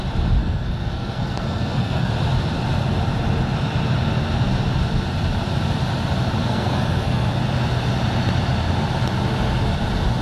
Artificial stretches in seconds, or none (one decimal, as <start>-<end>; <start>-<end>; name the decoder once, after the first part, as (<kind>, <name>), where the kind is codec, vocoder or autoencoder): 0.4-2.1 (codec, SNAC); 6.4-7.3